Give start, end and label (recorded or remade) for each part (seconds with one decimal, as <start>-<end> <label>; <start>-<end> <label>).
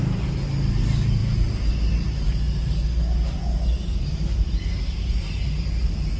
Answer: 0.0-6.2 recorded